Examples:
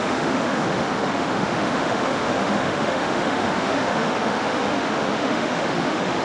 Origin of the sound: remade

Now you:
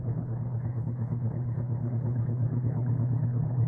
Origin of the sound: remade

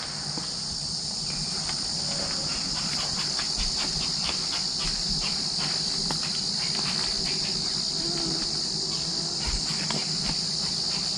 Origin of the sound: recorded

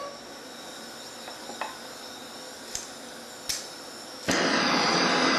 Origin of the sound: recorded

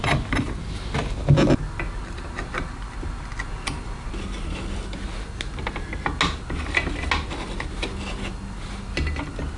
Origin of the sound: recorded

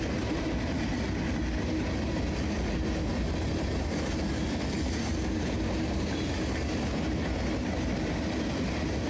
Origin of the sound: recorded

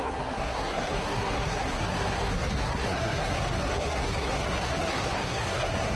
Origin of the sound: remade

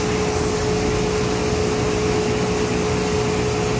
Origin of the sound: recorded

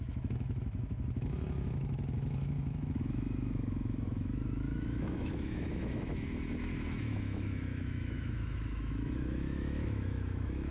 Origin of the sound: remade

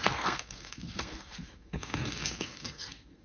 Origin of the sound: remade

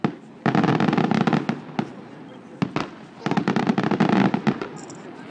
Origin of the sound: recorded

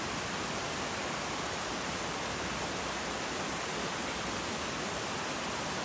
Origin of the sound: recorded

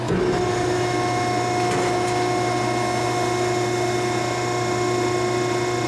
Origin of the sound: recorded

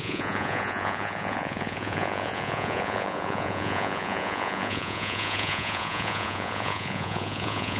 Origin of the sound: remade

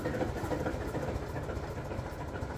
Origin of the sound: recorded